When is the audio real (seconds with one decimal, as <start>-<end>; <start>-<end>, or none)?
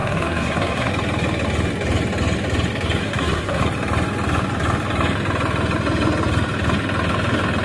0.9-3.0; 3.6-7.6